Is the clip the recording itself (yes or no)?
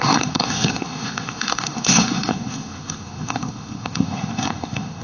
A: no